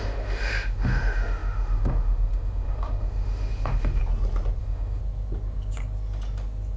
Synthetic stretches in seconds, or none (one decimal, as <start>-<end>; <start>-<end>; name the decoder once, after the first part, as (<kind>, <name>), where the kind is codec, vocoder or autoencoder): 0.0-4.0 (autoencoder, DAC-VAE); 4.6-5.0